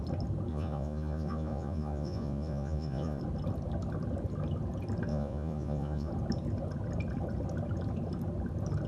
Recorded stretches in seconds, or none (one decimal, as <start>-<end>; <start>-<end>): 0.0-0.5; 3.2-5.1; 6.1-8.9